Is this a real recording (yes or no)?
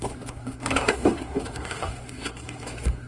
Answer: no